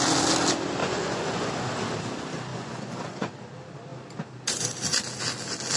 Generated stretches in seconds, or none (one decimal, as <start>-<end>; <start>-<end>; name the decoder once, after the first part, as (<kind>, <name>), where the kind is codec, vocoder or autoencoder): 0.8-1.5 (vocoder, Vocos); 2.5-3.3